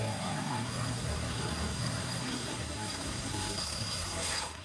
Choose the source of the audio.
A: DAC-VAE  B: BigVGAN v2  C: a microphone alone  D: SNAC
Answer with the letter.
D